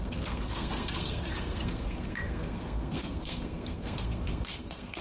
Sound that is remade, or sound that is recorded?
remade